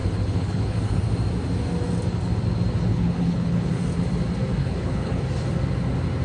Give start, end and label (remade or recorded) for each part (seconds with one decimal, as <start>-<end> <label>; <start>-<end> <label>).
0.0-1.0 remade; 1.0-2.9 recorded; 2.9-3.7 remade; 3.7-4.6 recorded; 4.6-5.2 remade; 5.2-6.2 recorded